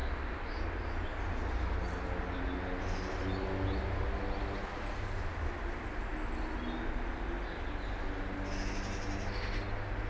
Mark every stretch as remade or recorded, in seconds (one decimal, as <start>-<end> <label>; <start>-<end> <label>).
0.0-10.1 recorded